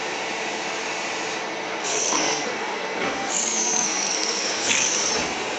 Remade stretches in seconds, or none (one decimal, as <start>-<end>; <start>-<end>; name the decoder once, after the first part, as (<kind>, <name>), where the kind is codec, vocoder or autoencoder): 1.8-5.1 (codec, SNAC)